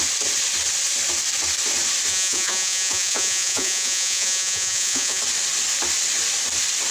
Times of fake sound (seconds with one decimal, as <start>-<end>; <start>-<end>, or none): 2.1-5.2